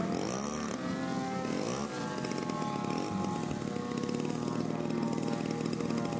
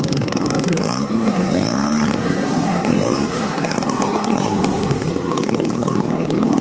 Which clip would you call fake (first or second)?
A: second